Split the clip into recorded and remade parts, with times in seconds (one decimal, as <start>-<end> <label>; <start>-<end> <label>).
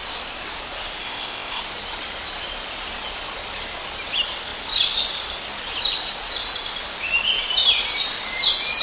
0.0-1.0 recorded; 1.0-1.6 remade; 1.6-8.8 recorded